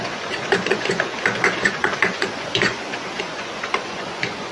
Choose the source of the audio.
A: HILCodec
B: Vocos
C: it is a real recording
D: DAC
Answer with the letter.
B